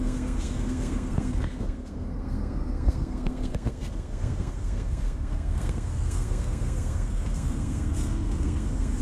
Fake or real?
fake